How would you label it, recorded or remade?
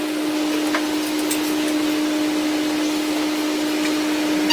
recorded